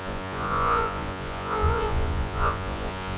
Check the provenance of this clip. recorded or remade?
remade